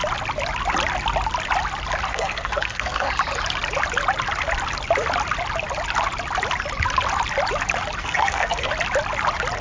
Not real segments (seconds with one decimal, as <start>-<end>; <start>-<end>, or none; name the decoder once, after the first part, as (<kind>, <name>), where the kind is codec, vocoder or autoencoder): 2.1-3.1 (codec, SNAC); 8.0-8.7